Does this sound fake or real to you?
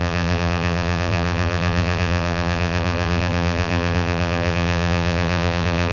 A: fake